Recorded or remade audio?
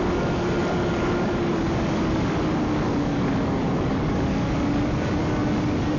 remade